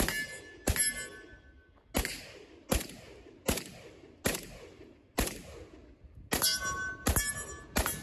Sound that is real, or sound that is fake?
real